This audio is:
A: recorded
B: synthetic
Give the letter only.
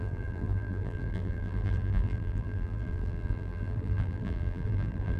B